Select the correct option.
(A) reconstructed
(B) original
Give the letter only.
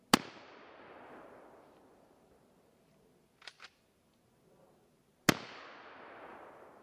B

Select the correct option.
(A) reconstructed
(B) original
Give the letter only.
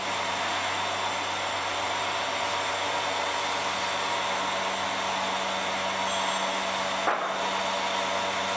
B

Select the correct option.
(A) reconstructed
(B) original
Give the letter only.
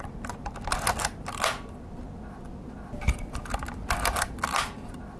B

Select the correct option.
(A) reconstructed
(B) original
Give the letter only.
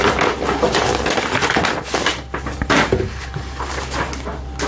B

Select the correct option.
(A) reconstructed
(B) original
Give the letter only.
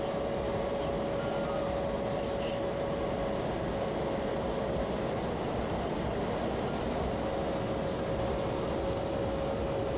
B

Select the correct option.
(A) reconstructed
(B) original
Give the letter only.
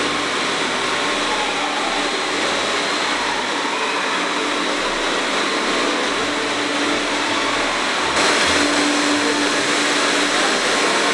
B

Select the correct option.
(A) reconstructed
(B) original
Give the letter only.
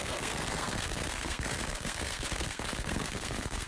A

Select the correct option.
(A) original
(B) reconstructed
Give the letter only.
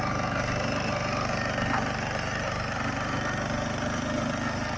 A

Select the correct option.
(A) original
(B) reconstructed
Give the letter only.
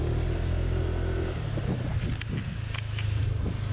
A